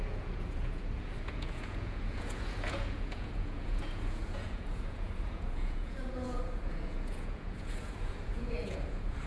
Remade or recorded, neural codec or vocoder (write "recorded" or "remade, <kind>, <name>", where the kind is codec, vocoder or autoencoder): remade, vocoder, Vocos